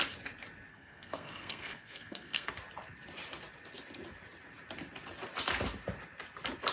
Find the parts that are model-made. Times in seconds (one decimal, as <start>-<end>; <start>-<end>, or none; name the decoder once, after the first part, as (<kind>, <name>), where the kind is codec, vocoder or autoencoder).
0.7-2.5 (codec, SNAC)